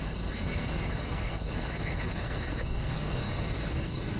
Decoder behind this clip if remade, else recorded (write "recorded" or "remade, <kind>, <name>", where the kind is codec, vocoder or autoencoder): remade, codec, SNAC